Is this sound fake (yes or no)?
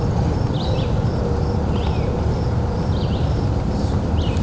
no